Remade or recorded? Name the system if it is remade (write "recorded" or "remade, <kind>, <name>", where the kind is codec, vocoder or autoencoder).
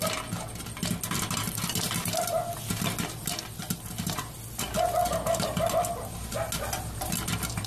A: recorded